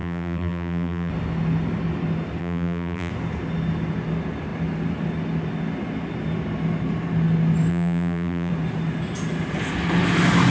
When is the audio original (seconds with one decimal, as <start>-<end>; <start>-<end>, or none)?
1.1-2.4; 3.1-7.7; 8.5-10.5